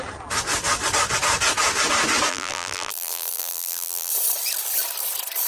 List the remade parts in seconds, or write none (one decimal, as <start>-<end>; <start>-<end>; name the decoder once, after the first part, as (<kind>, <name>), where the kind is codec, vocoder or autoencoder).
2.3-4.1 (vocoder, BigVGAN v2)